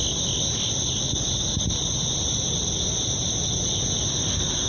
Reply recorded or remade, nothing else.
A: recorded